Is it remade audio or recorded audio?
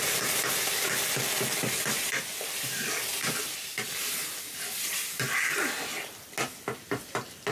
recorded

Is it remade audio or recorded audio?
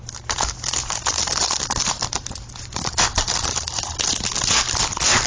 recorded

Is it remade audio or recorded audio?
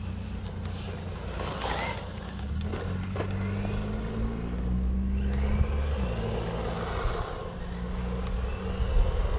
recorded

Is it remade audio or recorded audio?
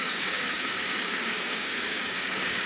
remade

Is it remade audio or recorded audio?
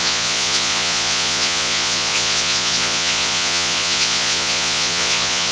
remade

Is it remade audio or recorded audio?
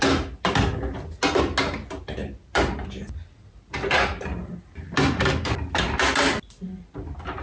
recorded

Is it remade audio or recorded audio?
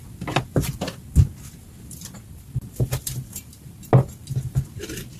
recorded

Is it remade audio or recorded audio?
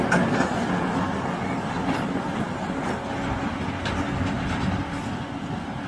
recorded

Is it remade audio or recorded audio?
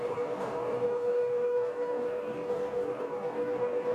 remade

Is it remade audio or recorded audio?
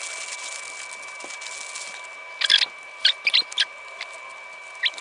recorded